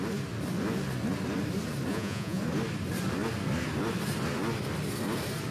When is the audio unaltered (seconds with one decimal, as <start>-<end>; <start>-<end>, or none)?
0.0-1.9; 2.4-5.5